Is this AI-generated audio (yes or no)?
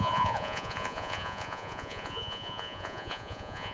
yes